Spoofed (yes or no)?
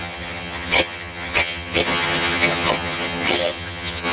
yes